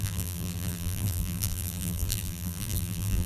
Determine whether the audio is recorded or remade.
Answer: remade